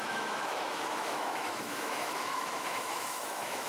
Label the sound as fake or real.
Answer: fake